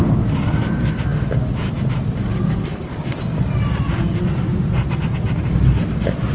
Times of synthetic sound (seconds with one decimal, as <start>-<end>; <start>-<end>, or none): none